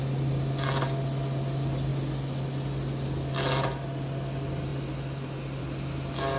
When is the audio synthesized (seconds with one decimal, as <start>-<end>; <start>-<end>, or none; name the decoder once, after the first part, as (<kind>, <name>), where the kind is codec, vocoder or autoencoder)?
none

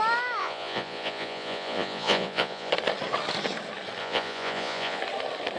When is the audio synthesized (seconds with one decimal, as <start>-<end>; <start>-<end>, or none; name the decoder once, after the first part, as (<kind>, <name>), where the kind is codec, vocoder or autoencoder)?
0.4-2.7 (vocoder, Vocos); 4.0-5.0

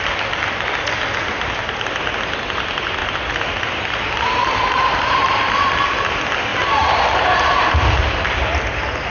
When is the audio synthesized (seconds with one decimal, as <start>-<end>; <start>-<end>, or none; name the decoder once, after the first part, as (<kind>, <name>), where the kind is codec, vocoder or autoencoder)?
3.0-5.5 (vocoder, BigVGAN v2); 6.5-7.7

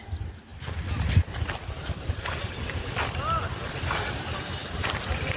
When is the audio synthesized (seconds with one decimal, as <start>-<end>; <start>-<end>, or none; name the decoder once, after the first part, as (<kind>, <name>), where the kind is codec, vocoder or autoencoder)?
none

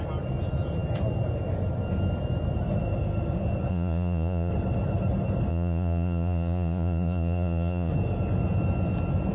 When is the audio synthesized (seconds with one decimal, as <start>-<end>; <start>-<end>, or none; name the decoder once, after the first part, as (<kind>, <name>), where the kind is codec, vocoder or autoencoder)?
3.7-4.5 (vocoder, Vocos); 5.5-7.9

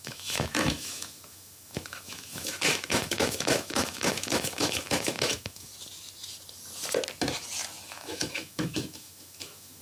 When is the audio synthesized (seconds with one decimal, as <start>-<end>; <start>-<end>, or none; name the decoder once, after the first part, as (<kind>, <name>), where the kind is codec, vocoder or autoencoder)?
0.0-5.7 (autoencoder, DAC-VAE); 7.9-9.8